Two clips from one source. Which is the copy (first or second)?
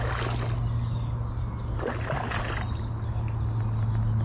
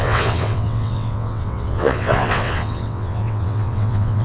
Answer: second